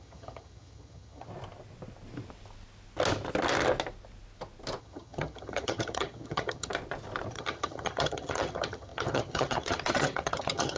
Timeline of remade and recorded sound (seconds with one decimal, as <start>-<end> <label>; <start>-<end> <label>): 0.0-1.3 remade; 1.3-4.8 recorded; 4.8-6.7 remade; 6.7-7.3 recorded; 7.3-10.8 remade